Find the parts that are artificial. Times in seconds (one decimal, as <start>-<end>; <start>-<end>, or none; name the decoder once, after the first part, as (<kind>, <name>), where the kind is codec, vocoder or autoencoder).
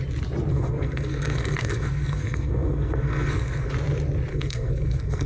0.5-3.7 (codec, SNAC); 4.3-5.3